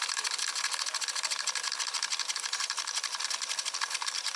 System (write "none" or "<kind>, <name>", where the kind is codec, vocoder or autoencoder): vocoder, BigVGAN v2